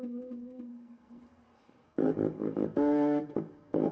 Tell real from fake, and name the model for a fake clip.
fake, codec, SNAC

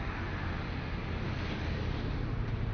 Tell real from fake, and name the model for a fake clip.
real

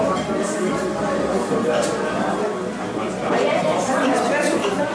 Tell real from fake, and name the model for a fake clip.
real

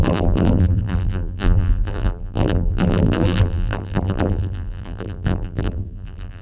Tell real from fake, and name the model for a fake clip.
fake, vocoder, BigVGAN v2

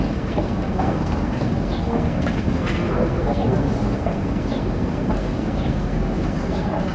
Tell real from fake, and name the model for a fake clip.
fake, codec, SNAC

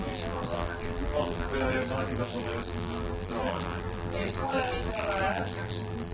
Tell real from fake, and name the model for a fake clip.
fake, vocoder, BigVGAN v2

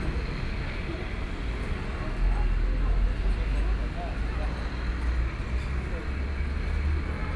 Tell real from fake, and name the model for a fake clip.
real